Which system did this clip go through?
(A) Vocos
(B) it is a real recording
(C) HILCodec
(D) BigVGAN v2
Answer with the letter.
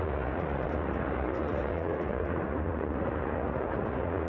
A